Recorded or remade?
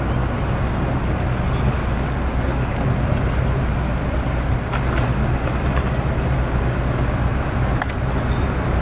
recorded